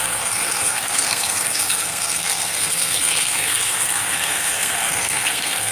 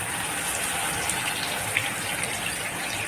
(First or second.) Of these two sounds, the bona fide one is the second